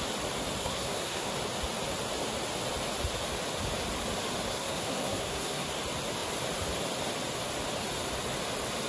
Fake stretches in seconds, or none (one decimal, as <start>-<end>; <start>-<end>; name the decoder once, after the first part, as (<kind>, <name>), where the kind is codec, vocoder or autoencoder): 0.6-1.3 (codec, SNAC); 4.5-5.8